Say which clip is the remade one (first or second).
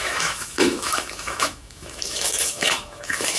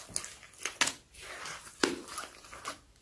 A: first